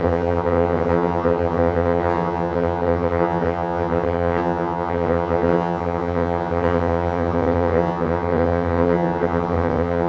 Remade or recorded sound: remade